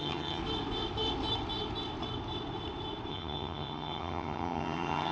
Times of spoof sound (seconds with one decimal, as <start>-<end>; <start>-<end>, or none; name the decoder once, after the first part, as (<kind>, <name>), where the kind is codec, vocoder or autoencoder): 0.0-0.4 (vocoder, HiFi-GAN); 3.1-5.1